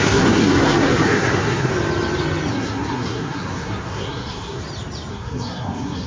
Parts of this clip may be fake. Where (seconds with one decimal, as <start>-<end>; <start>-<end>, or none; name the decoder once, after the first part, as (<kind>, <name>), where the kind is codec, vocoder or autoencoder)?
0.0-1.7 (codec, SNAC); 2.5-4.6; 5.1-6.1